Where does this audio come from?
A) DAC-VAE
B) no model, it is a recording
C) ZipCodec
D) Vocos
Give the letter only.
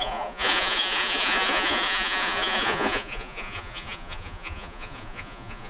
D